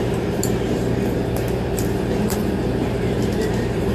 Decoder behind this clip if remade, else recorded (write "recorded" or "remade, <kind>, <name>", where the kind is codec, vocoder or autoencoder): remade, vocoder, BigVGAN v2